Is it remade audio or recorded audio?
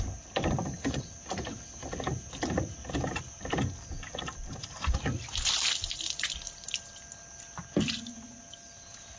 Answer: remade